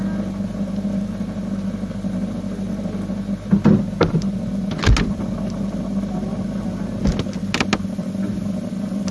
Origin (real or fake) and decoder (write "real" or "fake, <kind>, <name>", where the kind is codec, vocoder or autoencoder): real